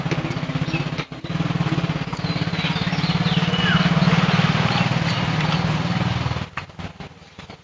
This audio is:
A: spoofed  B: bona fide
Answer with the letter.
B